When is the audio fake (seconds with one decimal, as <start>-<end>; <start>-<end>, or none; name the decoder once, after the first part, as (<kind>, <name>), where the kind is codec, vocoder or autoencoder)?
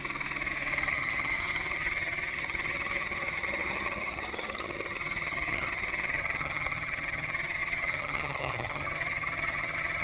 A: 0.9-10.0 (vocoder, HiFi-GAN)